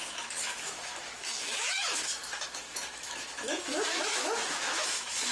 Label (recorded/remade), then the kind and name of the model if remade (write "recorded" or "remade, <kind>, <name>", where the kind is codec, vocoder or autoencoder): remade, autoencoder, DAC-VAE